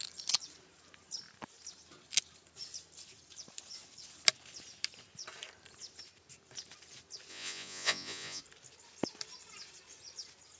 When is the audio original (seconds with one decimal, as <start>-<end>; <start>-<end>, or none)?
0.0-7.3; 8.4-10.6